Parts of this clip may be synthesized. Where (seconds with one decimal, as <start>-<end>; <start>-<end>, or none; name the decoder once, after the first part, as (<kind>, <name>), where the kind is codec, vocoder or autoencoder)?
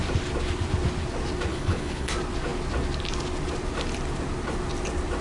1.5-2.1 (codec, HILCodec)